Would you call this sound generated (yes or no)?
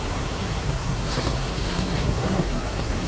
yes